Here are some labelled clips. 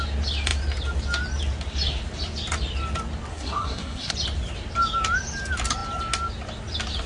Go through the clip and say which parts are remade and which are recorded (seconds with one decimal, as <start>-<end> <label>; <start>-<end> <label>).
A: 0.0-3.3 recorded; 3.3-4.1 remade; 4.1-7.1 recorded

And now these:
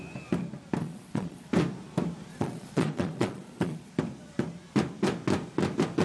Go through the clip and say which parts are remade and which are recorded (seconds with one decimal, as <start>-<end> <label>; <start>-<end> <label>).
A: 0.0-0.8 recorded; 0.8-1.5 remade; 1.5-2.3 recorded; 2.3-3.9 remade; 3.9-6.0 recorded

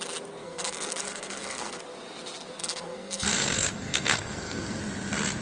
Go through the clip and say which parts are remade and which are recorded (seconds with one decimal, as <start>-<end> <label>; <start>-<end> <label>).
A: 0.0-0.4 recorded; 0.4-1.8 remade; 1.8-2.6 recorded; 2.6-4.8 remade; 4.8-5.4 recorded

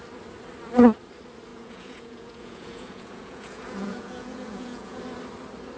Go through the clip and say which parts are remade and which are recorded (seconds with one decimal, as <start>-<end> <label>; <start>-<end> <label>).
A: 0.0-1.5 recorded; 1.5-5.0 remade; 5.0-5.8 recorded

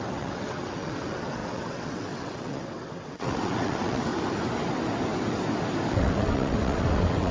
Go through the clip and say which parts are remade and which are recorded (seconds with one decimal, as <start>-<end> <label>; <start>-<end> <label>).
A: 0.0-4.1 remade; 4.1-5.9 recorded; 5.9-7.3 remade

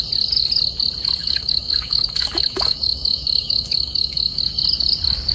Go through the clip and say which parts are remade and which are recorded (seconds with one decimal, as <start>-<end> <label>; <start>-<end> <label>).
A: 0.0-1.2 recorded; 1.2-4.4 remade; 4.4-5.3 recorded

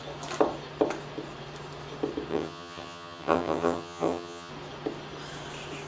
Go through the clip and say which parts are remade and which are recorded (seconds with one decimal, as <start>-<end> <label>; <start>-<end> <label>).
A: 0.0-2.3 recorded; 2.3-4.5 remade; 4.5-5.9 recorded